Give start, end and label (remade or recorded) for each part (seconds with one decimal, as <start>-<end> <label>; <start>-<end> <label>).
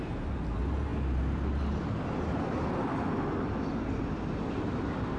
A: 0.0-5.2 recorded